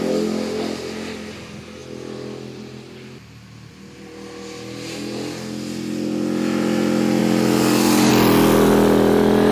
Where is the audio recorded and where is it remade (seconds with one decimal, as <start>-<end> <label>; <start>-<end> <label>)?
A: 0.0-7.2 recorded; 7.2-8.1 remade; 8.1-9.5 recorded